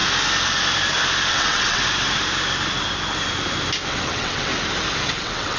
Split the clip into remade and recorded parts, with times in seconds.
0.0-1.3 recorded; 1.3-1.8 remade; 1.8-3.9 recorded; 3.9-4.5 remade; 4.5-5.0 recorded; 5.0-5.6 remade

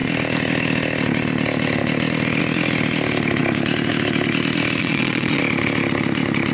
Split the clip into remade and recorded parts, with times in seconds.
0.0-4.8 recorded; 4.8-5.4 remade; 5.4-6.5 recorded

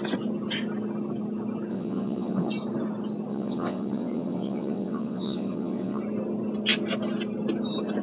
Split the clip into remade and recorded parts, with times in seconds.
0.0-1.7 recorded; 1.7-2.5 remade; 2.5-3.3 recorded; 3.3-6.0 remade; 6.0-8.0 recorded